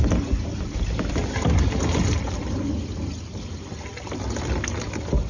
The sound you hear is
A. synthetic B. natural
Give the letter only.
B